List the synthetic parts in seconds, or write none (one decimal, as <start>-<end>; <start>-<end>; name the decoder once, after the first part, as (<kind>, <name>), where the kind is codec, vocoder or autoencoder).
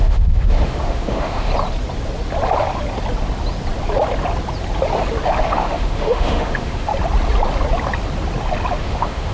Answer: 0.0-1.5 (autoencoder, DAC-VAE); 5.4-6.9; 8.8-9.3